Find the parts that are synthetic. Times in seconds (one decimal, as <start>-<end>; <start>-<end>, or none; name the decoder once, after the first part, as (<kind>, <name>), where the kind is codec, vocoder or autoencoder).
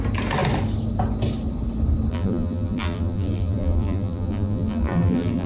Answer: 2.1-5.5 (vocoder, BigVGAN v2)